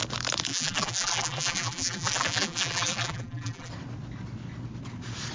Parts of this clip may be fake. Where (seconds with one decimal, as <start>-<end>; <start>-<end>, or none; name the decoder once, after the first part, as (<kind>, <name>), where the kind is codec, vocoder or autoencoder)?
0.5-3.7 (vocoder, BigVGAN v2)

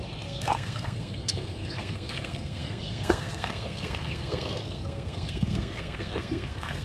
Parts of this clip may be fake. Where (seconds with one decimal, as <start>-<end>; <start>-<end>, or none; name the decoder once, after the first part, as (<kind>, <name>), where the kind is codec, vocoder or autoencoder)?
0.0-6.8 (codec, SNAC)

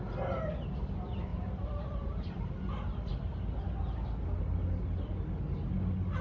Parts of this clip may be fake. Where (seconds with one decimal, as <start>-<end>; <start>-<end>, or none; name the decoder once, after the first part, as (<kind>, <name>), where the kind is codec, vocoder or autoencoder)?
1.3-2.5 (vocoder, BigVGAN v2)

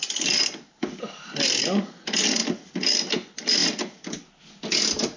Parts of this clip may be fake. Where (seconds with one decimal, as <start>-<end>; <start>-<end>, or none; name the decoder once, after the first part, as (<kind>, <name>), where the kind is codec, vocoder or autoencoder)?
none

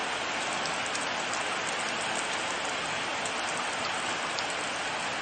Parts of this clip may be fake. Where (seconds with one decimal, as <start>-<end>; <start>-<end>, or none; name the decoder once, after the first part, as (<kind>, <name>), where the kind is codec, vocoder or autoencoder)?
none

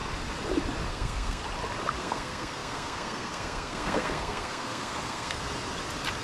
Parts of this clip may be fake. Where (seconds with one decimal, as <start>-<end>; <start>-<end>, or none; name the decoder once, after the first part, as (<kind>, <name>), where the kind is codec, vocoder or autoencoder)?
0.9-1.4 (codec, SNAC); 2.0-5.4

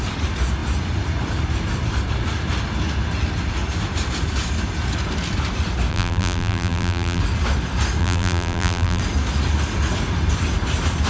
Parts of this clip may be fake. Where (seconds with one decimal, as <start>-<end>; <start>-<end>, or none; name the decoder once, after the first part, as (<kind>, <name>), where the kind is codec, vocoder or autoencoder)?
5.9-7.2 (vocoder, BigVGAN v2); 8.0-9.0